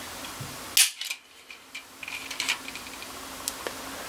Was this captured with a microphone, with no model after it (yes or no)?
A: yes